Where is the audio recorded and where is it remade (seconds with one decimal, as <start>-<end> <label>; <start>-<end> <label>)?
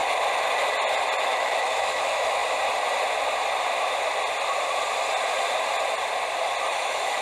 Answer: 0.0-1.2 recorded; 1.2-2.4 remade; 2.4-6.7 recorded; 6.7-7.2 remade